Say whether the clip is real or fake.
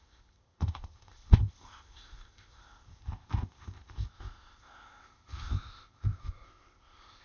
fake